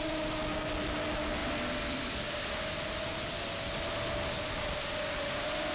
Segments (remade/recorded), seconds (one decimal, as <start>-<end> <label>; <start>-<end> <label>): 0.0-5.7 recorded